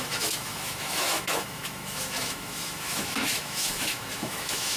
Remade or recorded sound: remade